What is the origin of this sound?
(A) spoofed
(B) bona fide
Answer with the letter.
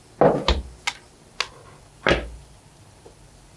B